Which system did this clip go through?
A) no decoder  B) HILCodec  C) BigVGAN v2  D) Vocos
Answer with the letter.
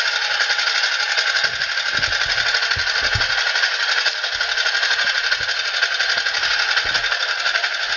A